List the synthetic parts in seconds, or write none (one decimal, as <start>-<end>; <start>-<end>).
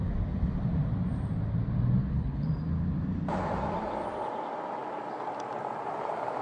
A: 2.0-2.5